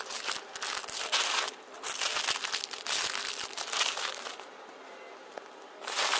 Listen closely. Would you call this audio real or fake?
real